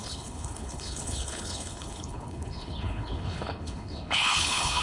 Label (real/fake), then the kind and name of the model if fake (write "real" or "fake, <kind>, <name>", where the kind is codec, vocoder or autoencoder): fake, codec, HILCodec